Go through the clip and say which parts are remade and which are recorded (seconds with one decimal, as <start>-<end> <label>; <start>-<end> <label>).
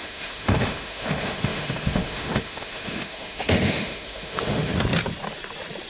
0.0-4.7 remade; 4.7-5.9 recorded